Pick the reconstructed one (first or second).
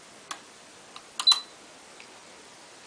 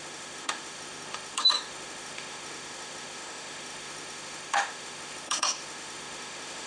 second